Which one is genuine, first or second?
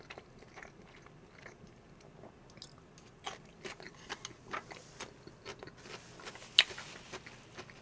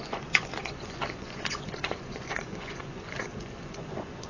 first